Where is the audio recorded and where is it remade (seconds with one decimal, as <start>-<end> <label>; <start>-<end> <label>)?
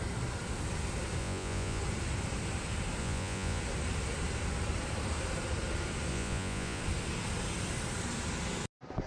0.0-1.2 recorded; 1.2-1.8 remade; 1.8-3.0 recorded; 3.0-3.6 remade; 3.6-6.1 recorded; 6.1-6.8 remade; 6.8-9.1 recorded